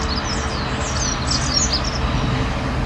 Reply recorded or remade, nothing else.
recorded